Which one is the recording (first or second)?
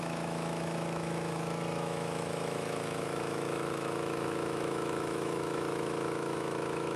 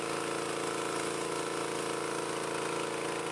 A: second